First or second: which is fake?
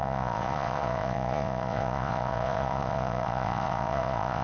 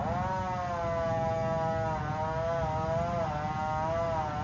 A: first